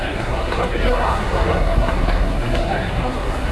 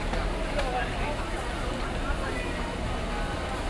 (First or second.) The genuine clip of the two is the second